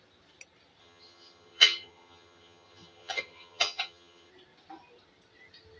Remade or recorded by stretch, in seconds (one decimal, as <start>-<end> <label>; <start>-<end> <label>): 0.0-0.8 recorded; 0.8-4.3 remade; 4.3-5.8 recorded